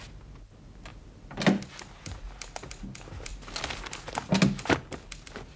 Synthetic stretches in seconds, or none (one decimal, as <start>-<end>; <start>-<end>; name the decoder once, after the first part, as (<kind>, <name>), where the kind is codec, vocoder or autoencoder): none